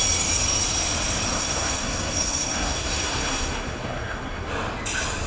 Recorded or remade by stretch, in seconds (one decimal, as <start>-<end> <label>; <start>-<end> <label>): 0.0-1.3 recorded; 1.3-4.5 remade; 4.5-5.3 recorded

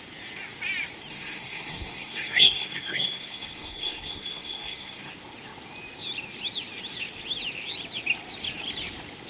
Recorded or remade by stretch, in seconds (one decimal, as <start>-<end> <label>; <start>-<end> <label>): 0.0-1.1 recorded; 1.1-5.1 remade; 5.1-9.3 recorded

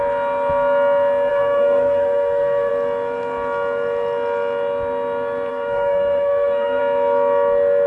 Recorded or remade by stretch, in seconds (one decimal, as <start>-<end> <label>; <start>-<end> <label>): 0.0-1.3 recorded; 1.3-2.7 remade; 2.7-5.5 recorded; 5.5-6.8 remade; 6.8-7.9 recorded